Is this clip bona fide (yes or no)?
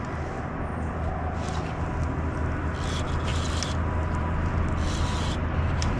yes